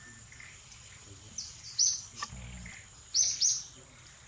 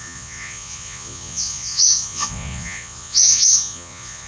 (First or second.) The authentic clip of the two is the first